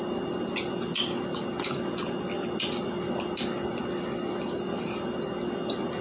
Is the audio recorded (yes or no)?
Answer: yes